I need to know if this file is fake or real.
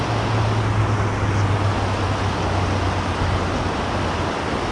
real